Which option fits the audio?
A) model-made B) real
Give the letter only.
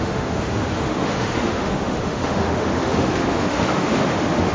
A